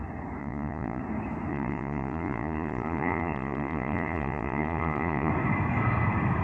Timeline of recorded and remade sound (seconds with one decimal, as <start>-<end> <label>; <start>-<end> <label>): 0.0-0.4 recorded; 0.4-1.0 remade; 1.0-1.5 recorded; 1.5-5.3 remade; 5.3-6.4 recorded